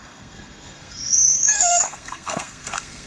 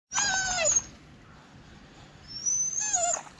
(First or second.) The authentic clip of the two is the second